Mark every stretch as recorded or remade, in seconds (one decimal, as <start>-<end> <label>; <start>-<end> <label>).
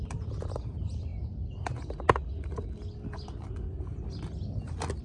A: 0.0-5.0 recorded